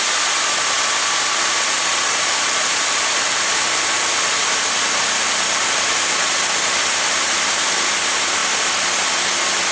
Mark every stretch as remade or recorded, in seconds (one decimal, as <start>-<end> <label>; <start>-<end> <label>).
0.0-1.9 recorded; 1.9-3.5 remade; 3.5-9.7 recorded